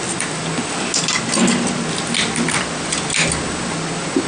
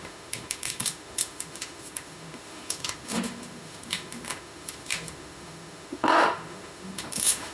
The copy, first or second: second